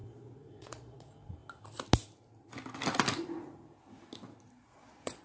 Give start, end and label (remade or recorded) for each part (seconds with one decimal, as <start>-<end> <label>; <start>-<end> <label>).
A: 0.0-0.6 recorded; 0.6-1.4 remade; 1.4-4.5 recorded; 4.5-5.2 remade

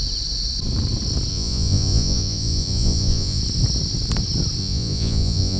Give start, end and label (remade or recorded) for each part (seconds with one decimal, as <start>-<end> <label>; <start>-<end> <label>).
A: 0.0-1.3 recorded; 1.3-3.4 remade; 3.4-4.6 recorded; 4.6-5.6 remade

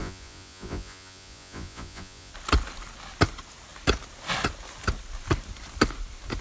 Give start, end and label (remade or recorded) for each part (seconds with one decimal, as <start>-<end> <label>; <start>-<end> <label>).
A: 0.0-2.3 remade; 2.3-6.4 recorded

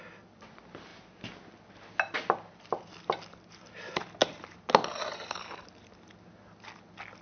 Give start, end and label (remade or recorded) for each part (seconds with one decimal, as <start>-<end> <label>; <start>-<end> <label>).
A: 0.0-7.2 recorded

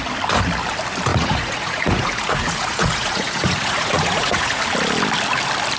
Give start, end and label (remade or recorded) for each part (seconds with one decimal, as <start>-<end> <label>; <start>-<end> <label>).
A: 0.0-1.1 recorded; 1.1-4.6 remade; 4.6-5.8 recorded

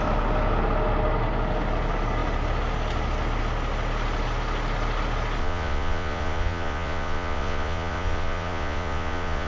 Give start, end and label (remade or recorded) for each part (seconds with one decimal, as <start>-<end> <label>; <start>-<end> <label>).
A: 0.0-5.4 recorded; 5.4-9.5 remade

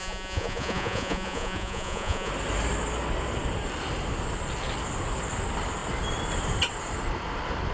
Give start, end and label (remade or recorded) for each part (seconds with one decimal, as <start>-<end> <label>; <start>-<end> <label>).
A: 0.0-2.3 remade; 2.3-7.7 recorded